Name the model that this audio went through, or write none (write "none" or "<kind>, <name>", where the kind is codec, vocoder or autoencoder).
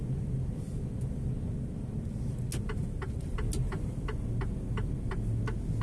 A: none